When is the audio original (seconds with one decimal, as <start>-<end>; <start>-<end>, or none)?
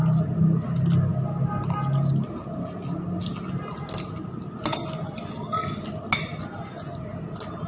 0.0-7.7